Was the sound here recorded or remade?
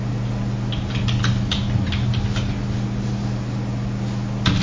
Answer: recorded